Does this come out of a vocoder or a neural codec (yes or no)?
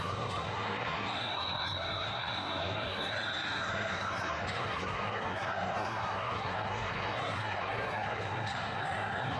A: yes